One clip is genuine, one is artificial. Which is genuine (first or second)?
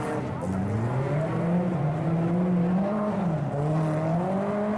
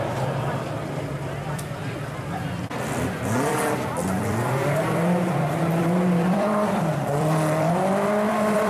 first